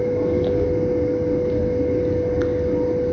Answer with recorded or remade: recorded